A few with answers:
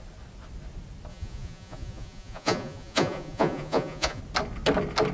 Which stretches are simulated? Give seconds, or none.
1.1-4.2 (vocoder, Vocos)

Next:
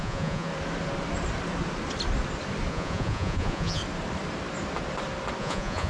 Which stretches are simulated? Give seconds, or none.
0.0-0.5 (vocoder, Vocos); 2.7-3.8; 5.4-5.9

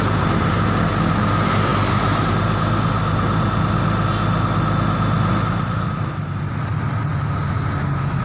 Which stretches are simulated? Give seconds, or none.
none

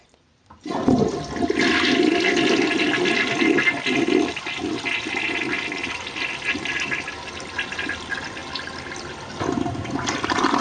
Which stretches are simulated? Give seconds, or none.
none

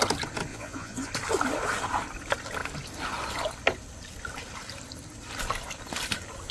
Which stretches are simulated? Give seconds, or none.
0.5-1.1 (vocoder, Vocos)

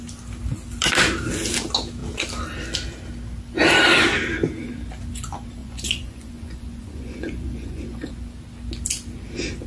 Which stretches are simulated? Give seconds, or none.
5.6-8.1 (vocoder, Vocos)